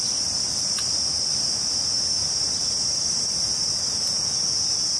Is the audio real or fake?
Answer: real